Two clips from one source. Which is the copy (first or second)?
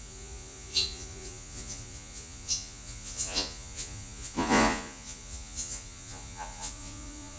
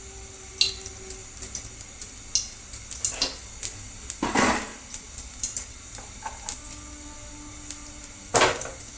first